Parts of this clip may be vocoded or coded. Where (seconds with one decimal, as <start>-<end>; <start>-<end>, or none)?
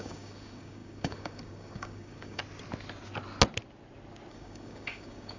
0.0-2.4; 4.3-5.4